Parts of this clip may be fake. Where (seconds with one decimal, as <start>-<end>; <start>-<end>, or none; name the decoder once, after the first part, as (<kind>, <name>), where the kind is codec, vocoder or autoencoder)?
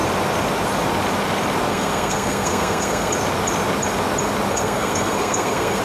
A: 1.7-3.1 (codec, SNAC); 4.5-5.8